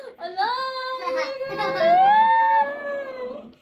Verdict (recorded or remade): recorded